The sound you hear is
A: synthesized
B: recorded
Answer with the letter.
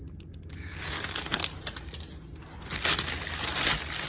B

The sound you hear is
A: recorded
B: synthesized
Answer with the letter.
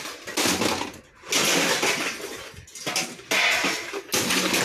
A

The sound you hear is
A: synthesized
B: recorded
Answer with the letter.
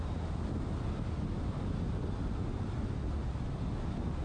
B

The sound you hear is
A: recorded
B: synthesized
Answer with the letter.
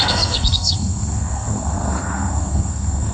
B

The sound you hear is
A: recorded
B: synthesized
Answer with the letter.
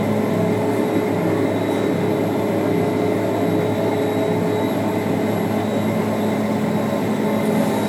A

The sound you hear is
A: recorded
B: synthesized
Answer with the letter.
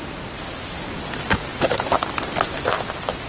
A